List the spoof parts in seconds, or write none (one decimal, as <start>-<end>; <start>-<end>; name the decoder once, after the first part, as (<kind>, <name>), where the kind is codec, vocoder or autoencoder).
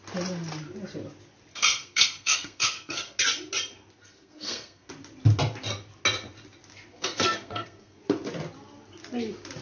1.5-3.2 (codec, SNAC); 4.0-4.9; 6.9-8.0